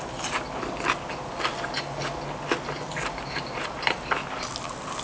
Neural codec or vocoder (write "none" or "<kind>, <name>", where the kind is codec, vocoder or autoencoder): none